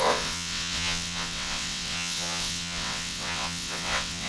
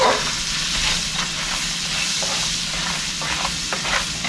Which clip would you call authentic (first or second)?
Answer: second